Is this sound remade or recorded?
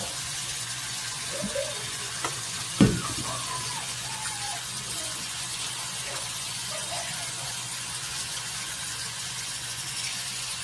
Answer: remade